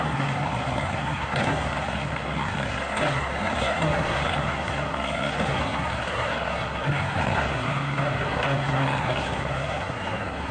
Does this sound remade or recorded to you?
remade